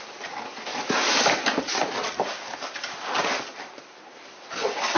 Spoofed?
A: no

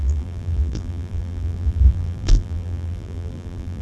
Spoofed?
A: yes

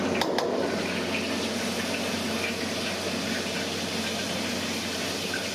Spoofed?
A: no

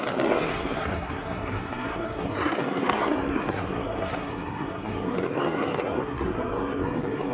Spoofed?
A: yes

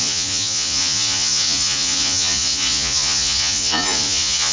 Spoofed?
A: yes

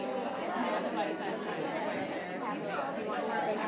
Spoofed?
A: no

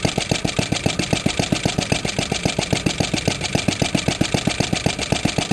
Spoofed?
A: no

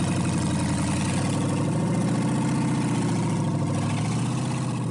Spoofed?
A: no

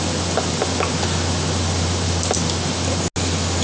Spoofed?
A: no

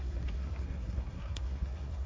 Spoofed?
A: yes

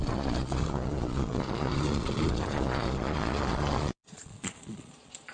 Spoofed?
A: yes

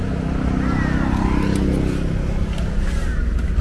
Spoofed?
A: no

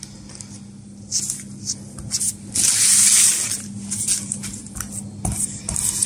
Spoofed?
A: no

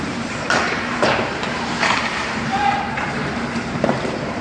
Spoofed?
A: yes